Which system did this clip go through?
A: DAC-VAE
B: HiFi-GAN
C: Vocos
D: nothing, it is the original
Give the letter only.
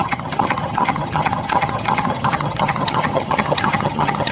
B